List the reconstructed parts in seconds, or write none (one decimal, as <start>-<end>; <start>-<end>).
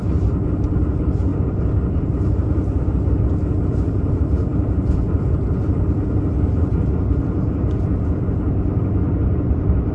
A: none